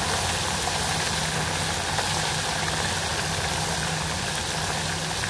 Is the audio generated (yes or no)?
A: no